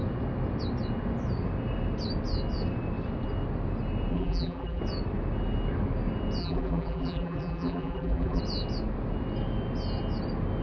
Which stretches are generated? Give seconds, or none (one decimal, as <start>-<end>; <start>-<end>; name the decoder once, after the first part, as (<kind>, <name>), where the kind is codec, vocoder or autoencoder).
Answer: 4.1-4.8 (vocoder, BigVGAN v2); 6.4-8.4